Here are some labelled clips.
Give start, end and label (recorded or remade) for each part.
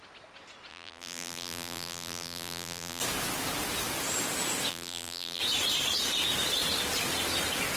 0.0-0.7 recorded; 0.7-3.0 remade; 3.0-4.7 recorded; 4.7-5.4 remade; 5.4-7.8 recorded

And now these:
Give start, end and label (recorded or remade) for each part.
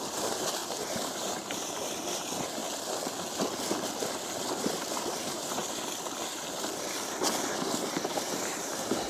0.0-2.6 remade; 2.6-4.7 recorded; 4.7-5.6 remade; 5.6-7.9 recorded; 7.9-9.1 remade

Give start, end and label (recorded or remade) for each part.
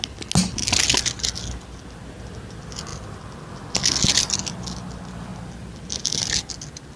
0.0-7.0 recorded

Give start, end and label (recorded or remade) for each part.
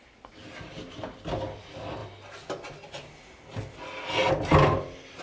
0.0-5.2 recorded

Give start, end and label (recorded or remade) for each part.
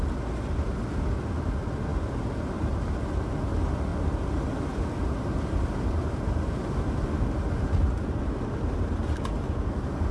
0.0-10.1 recorded